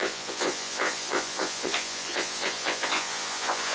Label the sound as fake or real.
fake